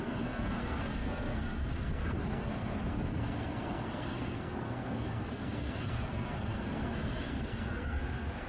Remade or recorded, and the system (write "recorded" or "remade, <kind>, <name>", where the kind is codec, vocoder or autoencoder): remade, codec, SNAC